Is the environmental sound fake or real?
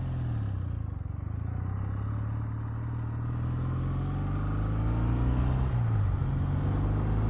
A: real